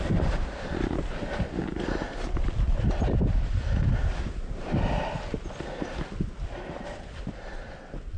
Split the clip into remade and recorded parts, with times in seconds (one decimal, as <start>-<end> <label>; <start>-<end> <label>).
0.0-8.2 recorded